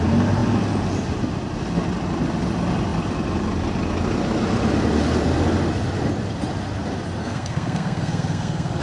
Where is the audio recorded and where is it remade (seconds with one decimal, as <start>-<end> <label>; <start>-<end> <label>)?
0.0-7.2 recorded; 7.2-8.8 remade